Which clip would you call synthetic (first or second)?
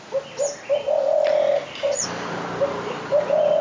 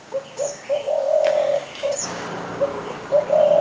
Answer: second